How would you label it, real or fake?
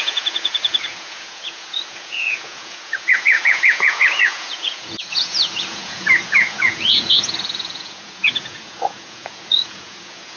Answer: fake